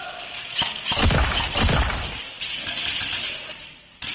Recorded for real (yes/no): yes